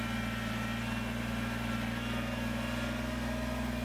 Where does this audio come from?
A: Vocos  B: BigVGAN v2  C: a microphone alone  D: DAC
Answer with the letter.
C